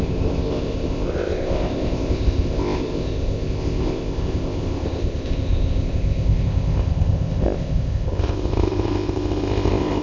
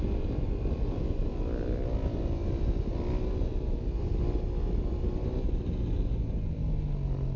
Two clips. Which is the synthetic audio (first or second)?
first